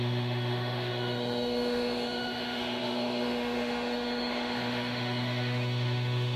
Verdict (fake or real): fake